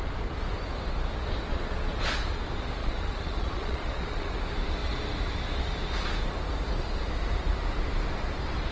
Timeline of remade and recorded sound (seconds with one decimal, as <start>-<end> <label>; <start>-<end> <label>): 0.0-1.5 recorded; 1.5-2.1 remade; 2.1-2.8 recorded; 2.8-4.3 remade; 4.3-8.7 recorded